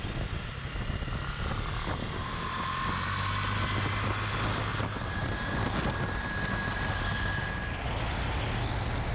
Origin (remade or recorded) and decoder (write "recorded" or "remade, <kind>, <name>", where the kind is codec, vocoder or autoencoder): recorded